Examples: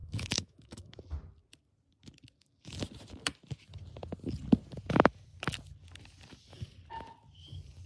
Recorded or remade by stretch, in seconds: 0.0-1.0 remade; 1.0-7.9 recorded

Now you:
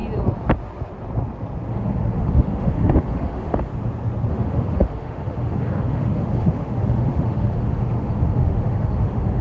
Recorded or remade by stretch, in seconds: 0.0-1.7 recorded; 1.7-3.7 remade; 3.7-4.3 recorded; 4.3-9.4 remade

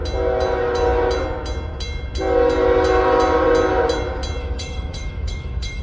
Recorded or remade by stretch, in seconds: 0.0-4.4 recorded; 4.4-5.8 remade

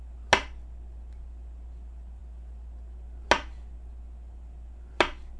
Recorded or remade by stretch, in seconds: 0.0-5.4 recorded

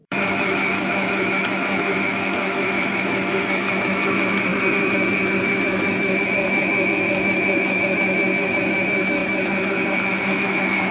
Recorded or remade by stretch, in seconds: 0.0-10.9 remade

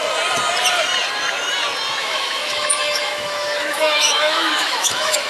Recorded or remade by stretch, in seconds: 0.0-2.0 recorded; 2.0-5.3 remade

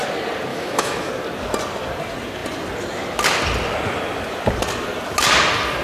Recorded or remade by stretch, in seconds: 0.0-0.5 recorded; 0.5-1.1 remade; 1.1-5.8 recorded

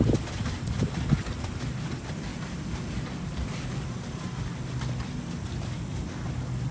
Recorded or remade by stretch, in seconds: 0.0-6.7 recorded